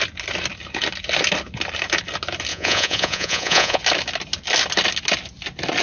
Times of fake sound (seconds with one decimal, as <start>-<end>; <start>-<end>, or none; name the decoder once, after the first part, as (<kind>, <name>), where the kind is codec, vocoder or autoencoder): 2.5-3.8 (vocoder, Vocos)